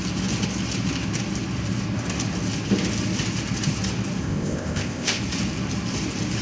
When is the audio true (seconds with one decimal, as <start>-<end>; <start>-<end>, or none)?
0.0-4.2; 5.2-6.4